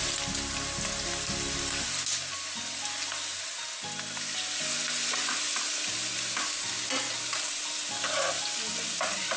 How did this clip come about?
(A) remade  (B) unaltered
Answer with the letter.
B